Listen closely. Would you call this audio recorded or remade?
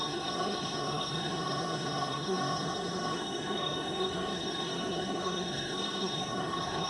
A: remade